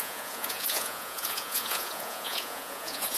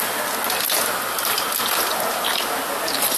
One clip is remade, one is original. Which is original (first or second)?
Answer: second